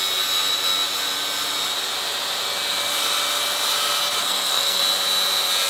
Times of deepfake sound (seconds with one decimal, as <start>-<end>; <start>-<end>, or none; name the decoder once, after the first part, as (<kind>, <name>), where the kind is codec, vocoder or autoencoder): 4.2-4.8 (codec, SNAC)

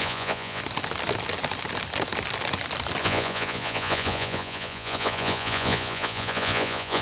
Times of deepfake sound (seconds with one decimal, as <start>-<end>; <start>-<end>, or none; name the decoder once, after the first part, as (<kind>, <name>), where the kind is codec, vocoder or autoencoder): 0.0-0.6 (vocoder, Vocos); 3.0-7.0

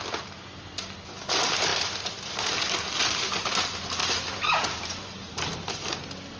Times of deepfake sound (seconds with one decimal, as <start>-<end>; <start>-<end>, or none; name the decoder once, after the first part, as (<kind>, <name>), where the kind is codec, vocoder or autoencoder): none

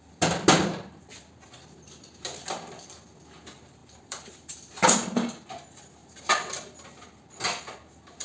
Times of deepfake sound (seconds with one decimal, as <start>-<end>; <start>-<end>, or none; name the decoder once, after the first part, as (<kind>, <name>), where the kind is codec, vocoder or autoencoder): 3.8-4.7 (vocoder, BigVGAN v2)

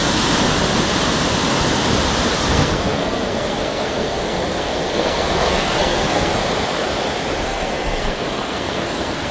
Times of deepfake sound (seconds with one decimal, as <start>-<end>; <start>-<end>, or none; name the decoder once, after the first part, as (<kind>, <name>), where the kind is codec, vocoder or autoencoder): 2.4-6.4 (codec, SNAC); 7.4-9.3

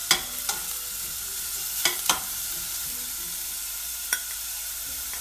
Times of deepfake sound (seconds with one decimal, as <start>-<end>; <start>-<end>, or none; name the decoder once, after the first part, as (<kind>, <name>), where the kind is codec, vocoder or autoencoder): 2.0-2.8 (vocoder, BigVGAN v2); 3.7-5.2

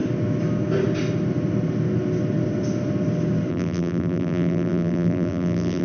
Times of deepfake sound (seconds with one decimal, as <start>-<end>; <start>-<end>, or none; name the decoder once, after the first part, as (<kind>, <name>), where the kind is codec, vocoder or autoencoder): 3.5-5.8 (vocoder, BigVGAN v2)